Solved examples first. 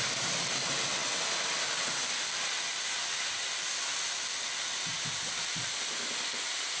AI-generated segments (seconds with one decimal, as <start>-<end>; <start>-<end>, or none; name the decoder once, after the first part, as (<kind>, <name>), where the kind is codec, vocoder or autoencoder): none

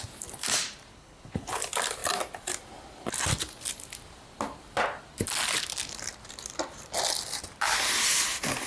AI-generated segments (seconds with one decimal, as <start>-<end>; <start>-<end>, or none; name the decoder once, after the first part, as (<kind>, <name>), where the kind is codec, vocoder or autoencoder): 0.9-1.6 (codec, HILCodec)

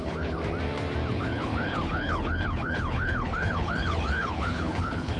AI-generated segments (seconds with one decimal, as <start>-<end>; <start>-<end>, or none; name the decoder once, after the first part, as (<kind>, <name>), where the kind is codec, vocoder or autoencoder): 0.0-0.4 (codec, HILCodec); 1.1-5.2

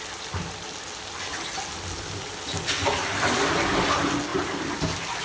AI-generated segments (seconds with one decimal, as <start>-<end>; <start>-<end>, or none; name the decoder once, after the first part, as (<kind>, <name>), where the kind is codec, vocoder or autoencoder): none

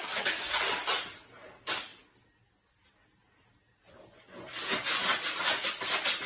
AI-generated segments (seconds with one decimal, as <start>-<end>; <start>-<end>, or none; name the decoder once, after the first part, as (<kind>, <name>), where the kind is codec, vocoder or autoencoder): none

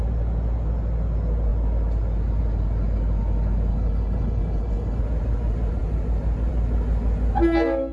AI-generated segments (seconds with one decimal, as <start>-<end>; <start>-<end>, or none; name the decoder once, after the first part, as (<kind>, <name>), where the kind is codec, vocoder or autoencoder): 3.7-5.0 (codec, HILCodec)

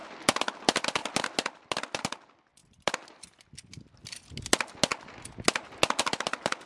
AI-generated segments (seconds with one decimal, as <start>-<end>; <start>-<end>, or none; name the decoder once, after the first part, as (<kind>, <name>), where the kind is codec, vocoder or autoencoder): none